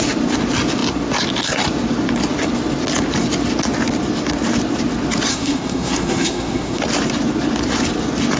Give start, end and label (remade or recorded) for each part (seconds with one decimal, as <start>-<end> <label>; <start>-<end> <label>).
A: 0.0-5.3 recorded; 5.3-6.8 remade; 6.8-8.4 recorded